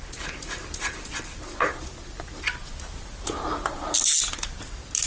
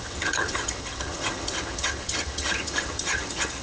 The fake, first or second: second